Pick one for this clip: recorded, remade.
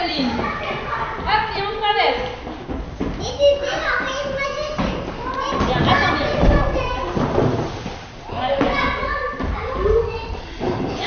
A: recorded